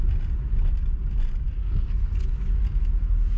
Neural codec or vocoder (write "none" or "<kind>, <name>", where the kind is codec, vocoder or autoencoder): none